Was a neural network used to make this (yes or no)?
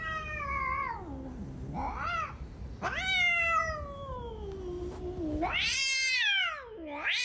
no